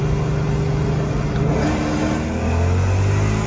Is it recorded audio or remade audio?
recorded